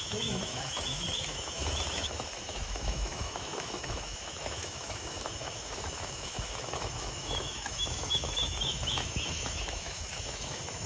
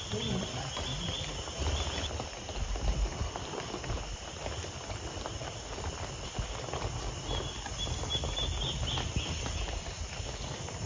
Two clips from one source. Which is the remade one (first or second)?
first